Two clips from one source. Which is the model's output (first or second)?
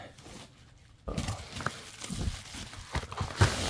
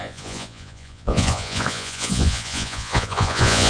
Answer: second